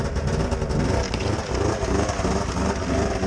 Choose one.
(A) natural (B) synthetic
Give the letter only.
A